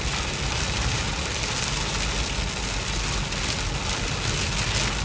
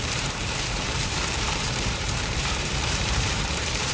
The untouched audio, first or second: first